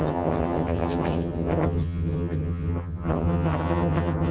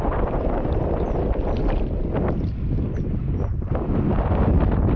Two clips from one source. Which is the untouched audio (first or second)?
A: second